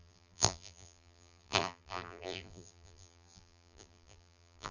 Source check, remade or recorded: remade